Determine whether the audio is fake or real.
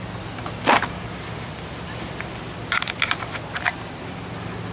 real